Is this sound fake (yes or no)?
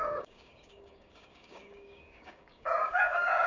yes